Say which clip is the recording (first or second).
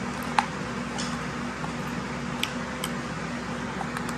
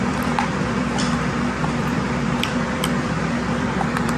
first